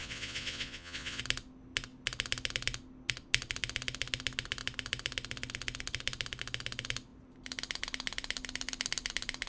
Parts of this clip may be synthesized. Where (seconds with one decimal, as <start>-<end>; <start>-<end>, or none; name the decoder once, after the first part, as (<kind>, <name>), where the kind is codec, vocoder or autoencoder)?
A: 0.0-1.2 (vocoder, Vocos)